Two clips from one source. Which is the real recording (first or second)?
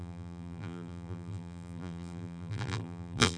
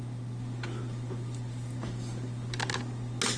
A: second